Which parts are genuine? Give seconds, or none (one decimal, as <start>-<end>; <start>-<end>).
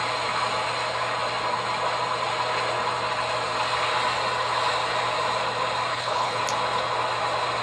0.0-5.9; 6.4-7.6